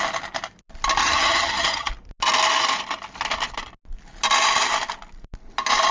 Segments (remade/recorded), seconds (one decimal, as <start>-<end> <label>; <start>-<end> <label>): 0.0-1.0 recorded; 1.0-1.9 remade; 1.9-5.9 recorded

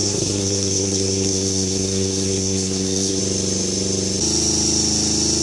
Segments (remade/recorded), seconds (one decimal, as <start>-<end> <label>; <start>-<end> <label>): 0.0-3.2 remade; 3.2-5.4 recorded

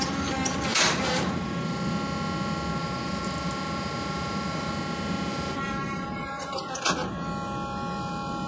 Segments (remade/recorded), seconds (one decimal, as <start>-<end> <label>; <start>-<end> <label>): 0.0-0.7 recorded; 0.7-1.2 remade; 1.2-2.8 recorded; 2.8-4.7 remade; 4.7-5.3 recorded; 5.3-6.2 remade; 6.2-8.5 recorded

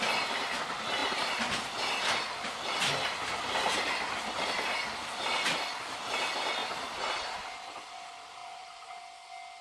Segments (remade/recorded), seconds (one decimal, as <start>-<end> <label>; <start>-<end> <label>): 0.0-8.4 recorded; 8.4-9.0 remade; 9.0-9.6 recorded

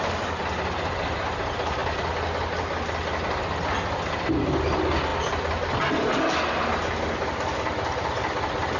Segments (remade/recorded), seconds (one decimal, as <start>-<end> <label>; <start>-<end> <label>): 0.0-8.8 recorded

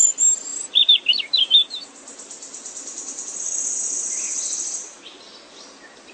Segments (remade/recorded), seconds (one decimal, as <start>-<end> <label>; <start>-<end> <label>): 0.0-6.1 recorded

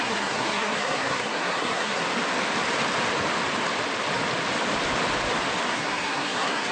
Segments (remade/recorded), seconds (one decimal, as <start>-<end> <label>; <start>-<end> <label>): 0.0-2.0 remade; 2.0-5.7 recorded; 5.7-6.7 remade